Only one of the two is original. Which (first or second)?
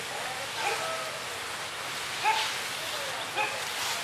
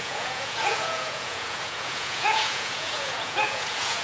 first